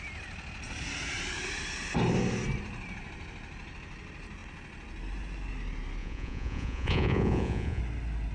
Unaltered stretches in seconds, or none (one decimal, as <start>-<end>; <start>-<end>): 0.0-6.0; 7.8-8.3